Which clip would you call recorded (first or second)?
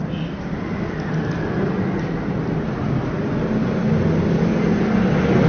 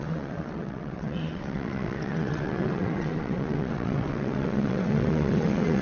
first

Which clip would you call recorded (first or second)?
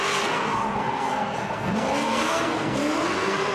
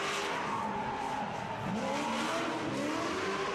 second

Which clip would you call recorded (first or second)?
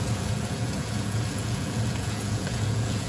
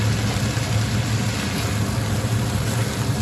second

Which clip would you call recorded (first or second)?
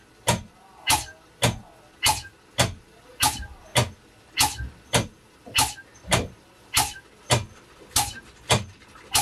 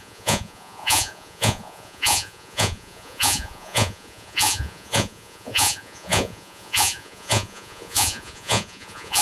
first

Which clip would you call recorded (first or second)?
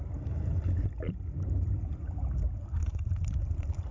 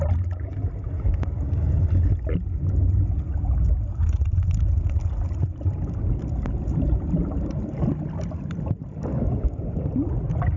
second